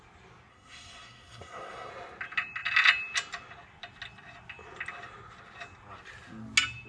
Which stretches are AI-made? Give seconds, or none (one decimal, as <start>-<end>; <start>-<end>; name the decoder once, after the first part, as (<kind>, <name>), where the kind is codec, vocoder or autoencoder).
0.5-1.9 (codec, SNAC)